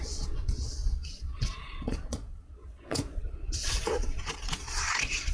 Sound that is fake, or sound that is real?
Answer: fake